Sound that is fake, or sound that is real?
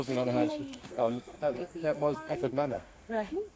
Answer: fake